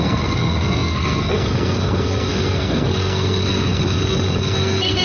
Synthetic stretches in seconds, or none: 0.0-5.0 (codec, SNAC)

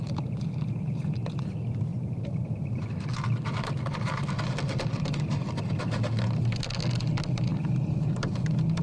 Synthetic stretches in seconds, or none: 1.9-6.3 (vocoder, BigVGAN v2); 7.5-8.3

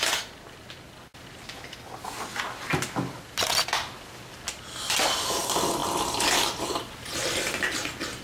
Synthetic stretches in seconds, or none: none

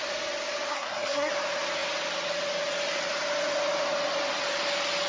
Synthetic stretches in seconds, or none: 0.7-1.3 (codec, SNAC)

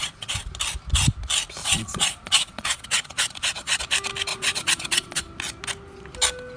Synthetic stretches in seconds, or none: 0.0-0.5 (vocoder, Vocos); 1.6-3.8; 4.3-5.2